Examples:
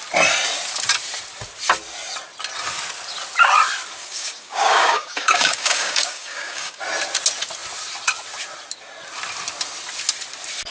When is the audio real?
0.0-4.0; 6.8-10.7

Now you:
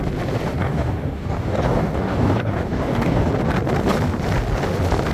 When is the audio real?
0.0-0.6; 3.3-5.1

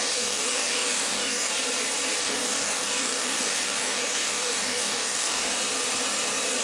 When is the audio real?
1.5-2.2; 5.4-6.6

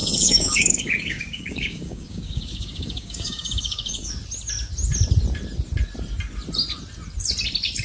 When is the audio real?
4.1-7.8